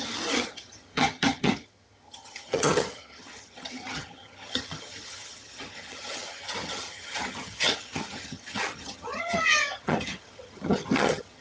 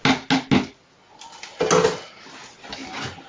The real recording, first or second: second